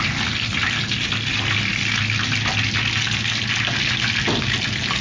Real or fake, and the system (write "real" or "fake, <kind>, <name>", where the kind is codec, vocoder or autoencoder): real